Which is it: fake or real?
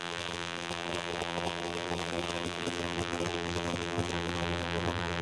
fake